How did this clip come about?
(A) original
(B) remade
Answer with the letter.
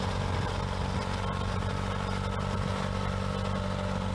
A